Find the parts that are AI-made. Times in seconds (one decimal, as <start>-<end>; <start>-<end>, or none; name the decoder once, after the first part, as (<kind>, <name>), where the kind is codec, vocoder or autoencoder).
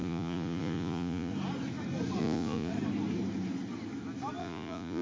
0.0-1.3 (vocoder, Vocos); 2.2-2.7; 4.4-5.0